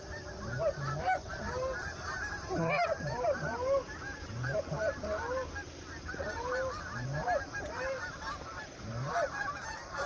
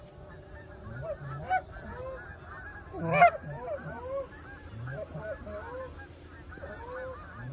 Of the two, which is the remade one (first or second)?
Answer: first